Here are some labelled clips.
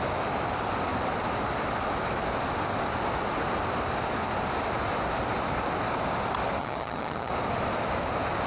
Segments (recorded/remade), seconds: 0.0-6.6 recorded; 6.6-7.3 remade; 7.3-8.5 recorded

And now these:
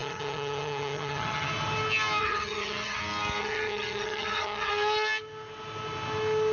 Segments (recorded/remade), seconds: 0.0-1.5 remade; 1.5-2.2 recorded; 2.2-3.0 remade; 3.0-3.4 recorded; 3.4-4.7 remade; 4.7-6.5 recorded

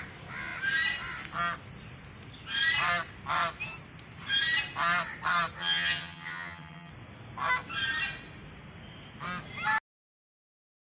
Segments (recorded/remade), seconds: 0.0-5.6 recorded; 5.6-6.9 remade; 6.9-10.8 recorded

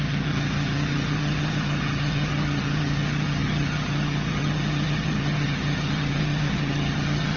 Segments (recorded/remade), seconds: 0.0-7.4 remade

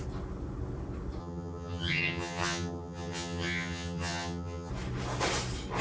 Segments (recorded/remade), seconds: 0.0-1.2 recorded; 1.2-4.7 remade; 4.7-5.8 recorded

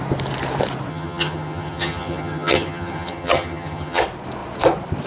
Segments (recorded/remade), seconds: 0.0-0.9 recorded; 0.9-4.0 remade; 4.0-5.1 recorded

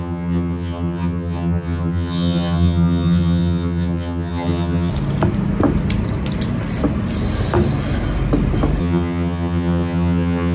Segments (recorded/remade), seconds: 0.0-4.9 remade; 4.9-8.8 recorded; 8.8-10.5 remade

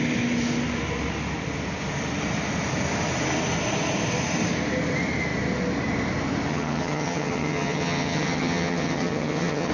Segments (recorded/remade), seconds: 0.0-6.5 recorded; 6.5-9.7 remade